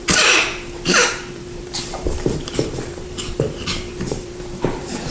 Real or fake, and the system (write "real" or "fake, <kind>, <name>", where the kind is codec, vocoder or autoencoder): fake, vocoder, BigVGAN v2